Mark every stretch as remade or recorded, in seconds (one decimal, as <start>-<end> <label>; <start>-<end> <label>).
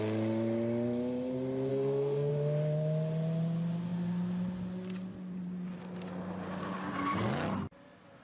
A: 0.0-1.7 recorded; 1.7-2.3 remade; 2.3-8.2 recorded